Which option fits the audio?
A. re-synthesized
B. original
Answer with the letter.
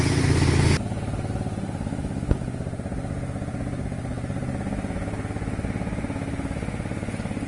B